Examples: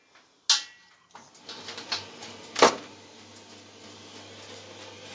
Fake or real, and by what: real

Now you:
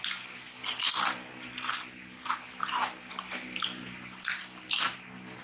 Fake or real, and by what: real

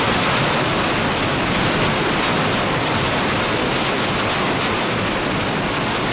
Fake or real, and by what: real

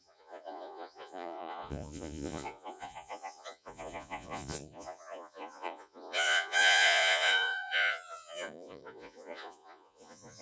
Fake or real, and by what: fake, vocoder, Vocos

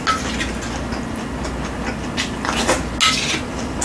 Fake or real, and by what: real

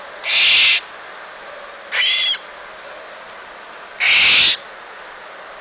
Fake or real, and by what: real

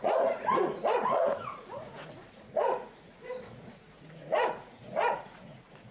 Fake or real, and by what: fake, vocoder, Vocos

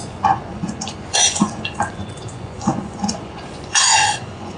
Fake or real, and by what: fake, vocoder, Vocos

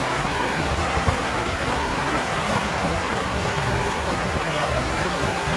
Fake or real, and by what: fake, codec, SNAC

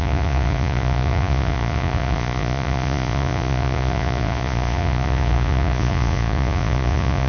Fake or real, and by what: fake, vocoder, Vocos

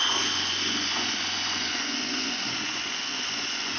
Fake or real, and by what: fake, vocoder, Vocos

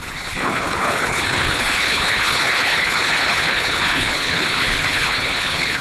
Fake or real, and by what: fake, codec, HILCodec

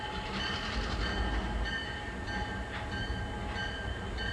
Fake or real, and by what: real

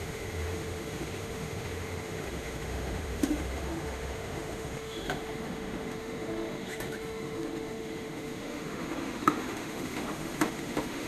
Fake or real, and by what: fake, autoencoder, DAC-VAE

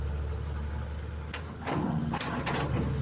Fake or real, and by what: real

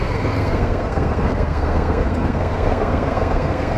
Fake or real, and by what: fake, codec, SNAC